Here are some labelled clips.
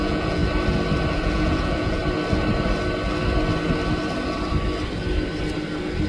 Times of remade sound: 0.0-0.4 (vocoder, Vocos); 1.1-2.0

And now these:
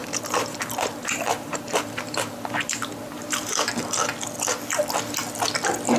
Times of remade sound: 0.0-3.6 (vocoder, BigVGAN v2)

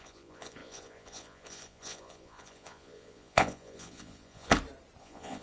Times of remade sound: 0.0-4.5 (vocoder, Vocos); 5.0-5.4

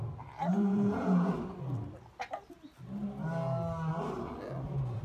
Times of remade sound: 0.5-1.3 (vocoder, Vocos)